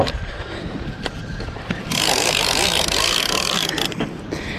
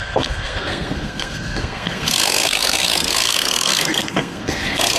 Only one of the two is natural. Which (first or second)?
first